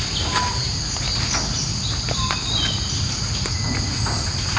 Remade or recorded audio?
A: recorded